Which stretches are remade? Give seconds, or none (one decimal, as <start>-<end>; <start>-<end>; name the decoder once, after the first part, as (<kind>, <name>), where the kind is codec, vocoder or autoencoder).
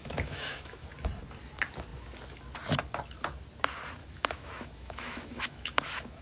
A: 0.0-0.9 (autoencoder, DAC-VAE); 4.0-6.2